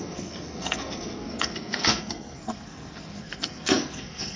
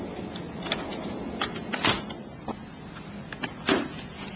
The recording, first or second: second